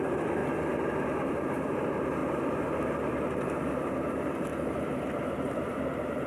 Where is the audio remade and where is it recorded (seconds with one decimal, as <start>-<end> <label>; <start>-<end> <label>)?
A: 0.0-0.4 remade; 0.4-1.0 recorded; 1.0-6.3 remade